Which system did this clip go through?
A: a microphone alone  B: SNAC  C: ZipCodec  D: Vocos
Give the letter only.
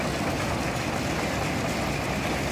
A